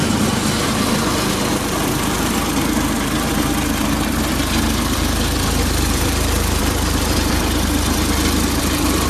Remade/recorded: remade